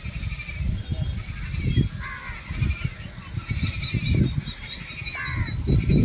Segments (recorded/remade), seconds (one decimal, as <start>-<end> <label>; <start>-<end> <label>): 0.0-6.0 recorded